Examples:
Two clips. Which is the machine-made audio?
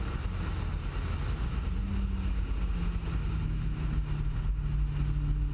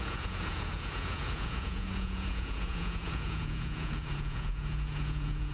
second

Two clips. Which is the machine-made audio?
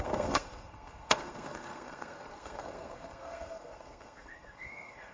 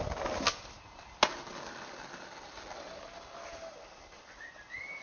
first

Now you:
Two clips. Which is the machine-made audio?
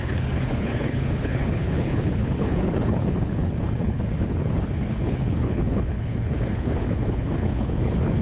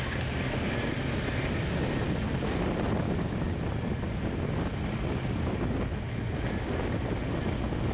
first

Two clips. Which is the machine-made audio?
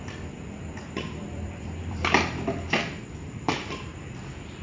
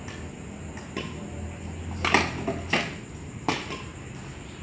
first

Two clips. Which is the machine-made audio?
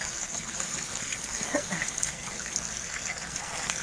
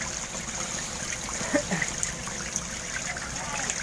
first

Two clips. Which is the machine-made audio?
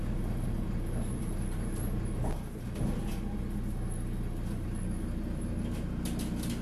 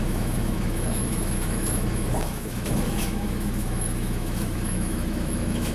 second